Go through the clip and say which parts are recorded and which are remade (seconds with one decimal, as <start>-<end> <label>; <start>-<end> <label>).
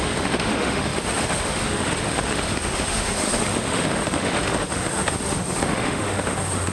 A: 0.0-6.7 remade